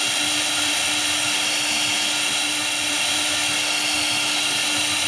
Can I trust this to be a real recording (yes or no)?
yes